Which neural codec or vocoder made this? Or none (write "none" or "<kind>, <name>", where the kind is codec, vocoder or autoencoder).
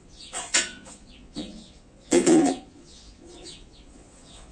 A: vocoder, Vocos